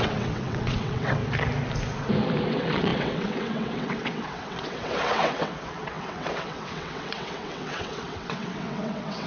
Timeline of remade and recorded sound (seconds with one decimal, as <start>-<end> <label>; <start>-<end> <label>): 0.0-1.2 remade; 1.2-2.5 recorded; 2.5-9.3 remade